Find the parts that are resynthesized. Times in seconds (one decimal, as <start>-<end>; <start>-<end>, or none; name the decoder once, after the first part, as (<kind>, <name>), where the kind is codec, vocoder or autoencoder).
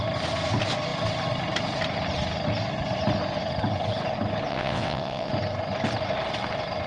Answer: 4.5-5.3 (vocoder, WaveNeXt)